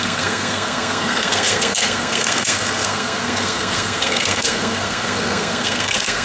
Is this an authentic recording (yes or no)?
no